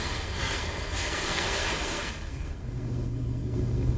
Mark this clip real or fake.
fake